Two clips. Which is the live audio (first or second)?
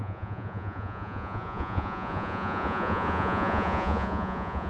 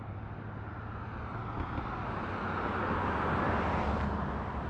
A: second